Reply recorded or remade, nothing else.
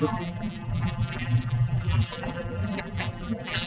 remade